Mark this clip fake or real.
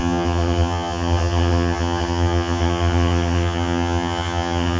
fake